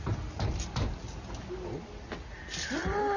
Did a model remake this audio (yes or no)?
no